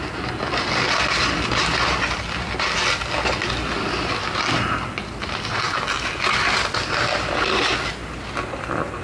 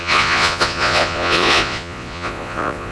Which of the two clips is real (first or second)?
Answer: first